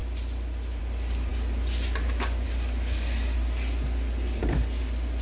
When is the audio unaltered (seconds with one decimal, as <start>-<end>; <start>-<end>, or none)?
0.0-5.2